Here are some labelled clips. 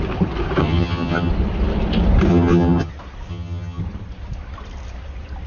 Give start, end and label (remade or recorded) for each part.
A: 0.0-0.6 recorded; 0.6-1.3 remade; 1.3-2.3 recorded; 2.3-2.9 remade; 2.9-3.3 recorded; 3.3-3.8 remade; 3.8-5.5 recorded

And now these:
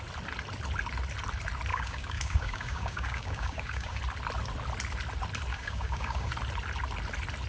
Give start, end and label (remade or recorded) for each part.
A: 0.0-1.7 recorded; 1.7-4.0 remade; 4.0-5.5 recorded; 5.5-6.3 remade; 6.3-7.5 recorded

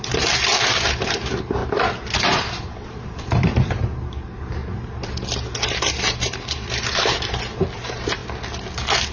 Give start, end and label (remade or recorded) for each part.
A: 0.0-1.6 remade; 1.6-2.6 recorded; 2.6-4.6 remade; 4.6-5.9 recorded; 5.9-8.2 remade; 8.2-9.1 recorded